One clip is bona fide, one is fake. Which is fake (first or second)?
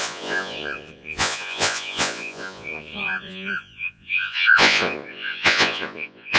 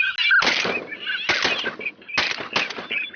first